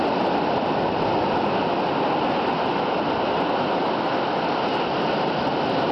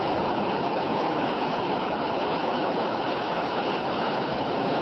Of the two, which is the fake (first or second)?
second